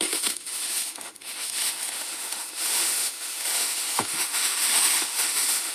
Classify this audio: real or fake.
fake